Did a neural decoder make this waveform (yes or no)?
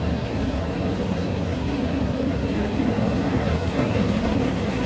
yes